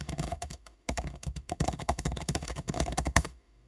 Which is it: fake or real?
fake